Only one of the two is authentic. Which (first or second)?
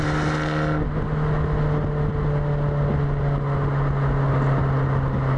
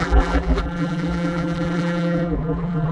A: first